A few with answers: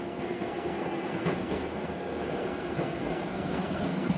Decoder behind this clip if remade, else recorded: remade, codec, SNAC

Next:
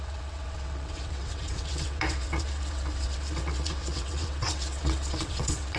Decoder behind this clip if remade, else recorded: remade, vocoder, WaveNeXt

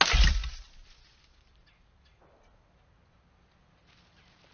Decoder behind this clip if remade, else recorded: recorded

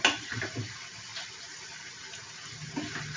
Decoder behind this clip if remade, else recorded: recorded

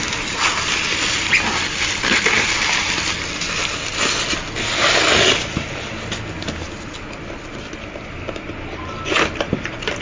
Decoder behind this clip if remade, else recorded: recorded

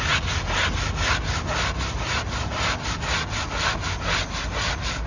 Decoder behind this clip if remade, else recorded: recorded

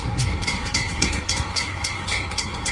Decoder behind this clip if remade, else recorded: remade, codec, SNAC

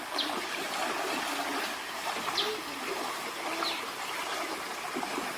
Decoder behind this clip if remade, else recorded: recorded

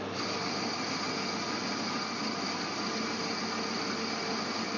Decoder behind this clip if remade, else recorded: recorded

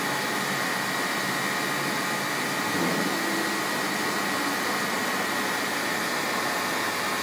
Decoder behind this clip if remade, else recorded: recorded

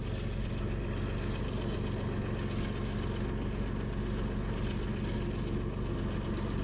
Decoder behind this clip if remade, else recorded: recorded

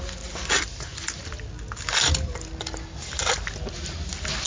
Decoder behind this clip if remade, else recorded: recorded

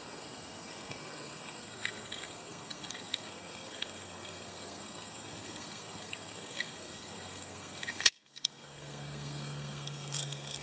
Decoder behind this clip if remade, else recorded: remade, codec, SNAC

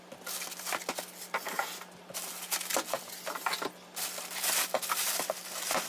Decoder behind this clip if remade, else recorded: recorded